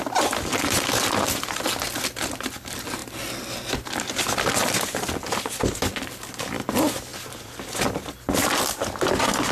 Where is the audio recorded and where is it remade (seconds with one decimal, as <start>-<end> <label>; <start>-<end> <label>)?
0.0-7.1 recorded; 7.1-8.7 remade; 8.7-9.5 recorded